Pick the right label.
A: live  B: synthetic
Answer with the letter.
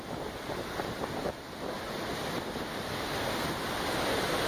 A